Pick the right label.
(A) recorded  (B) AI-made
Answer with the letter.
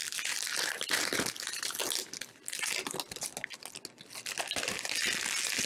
A